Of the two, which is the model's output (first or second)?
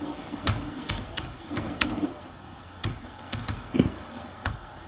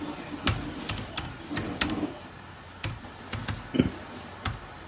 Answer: first